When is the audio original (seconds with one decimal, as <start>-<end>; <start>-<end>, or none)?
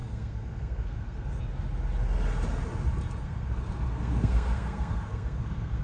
1.4-3.2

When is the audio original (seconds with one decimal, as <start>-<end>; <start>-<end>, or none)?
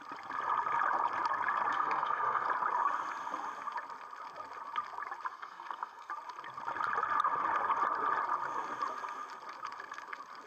0.0-1.7; 2.5-5.3; 6.1-10.5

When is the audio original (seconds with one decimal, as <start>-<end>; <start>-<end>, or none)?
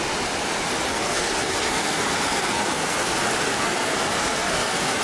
0.0-0.9; 3.1-3.5